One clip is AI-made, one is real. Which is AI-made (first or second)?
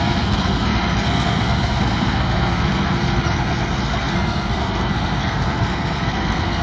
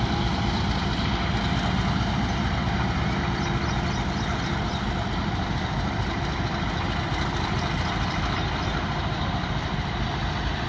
first